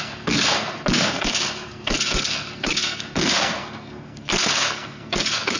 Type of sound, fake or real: fake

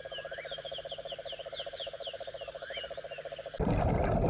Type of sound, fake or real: real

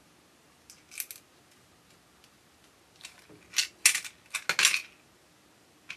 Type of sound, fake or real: real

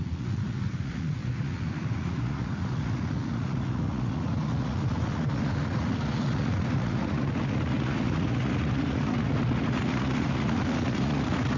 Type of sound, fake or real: fake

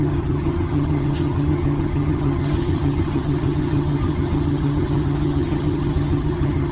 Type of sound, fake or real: fake